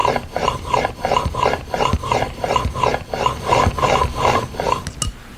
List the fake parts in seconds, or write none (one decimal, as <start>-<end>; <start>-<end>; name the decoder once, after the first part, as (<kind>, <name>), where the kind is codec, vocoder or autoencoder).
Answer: 0.0-0.9 (vocoder, BigVGAN v2)